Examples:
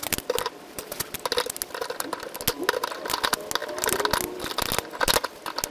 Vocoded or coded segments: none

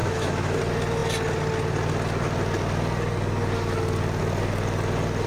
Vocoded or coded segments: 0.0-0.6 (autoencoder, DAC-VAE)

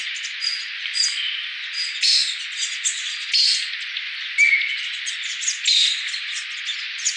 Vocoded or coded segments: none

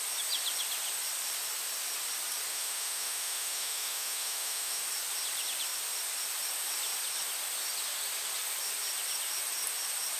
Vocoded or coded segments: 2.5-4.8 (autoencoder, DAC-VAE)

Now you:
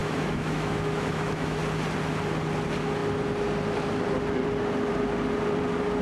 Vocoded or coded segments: 0.0-1.6 (autoencoder, DAC-VAE)

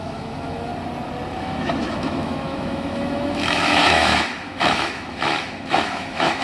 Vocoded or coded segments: 0.0-0.7 (autoencoder, DAC-VAE); 1.4-6.4

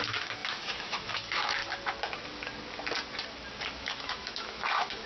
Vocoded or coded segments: 0.0-1.6 (autoencoder, DAC-VAE); 3.8-5.1